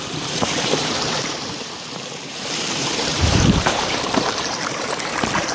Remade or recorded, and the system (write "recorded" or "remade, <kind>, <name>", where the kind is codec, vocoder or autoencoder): remade, vocoder, BigVGAN v2